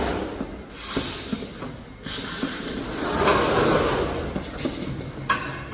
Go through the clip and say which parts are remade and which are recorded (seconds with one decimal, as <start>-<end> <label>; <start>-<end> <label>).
0.0-5.7 recorded